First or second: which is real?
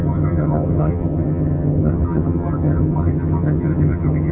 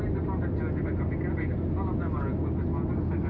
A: second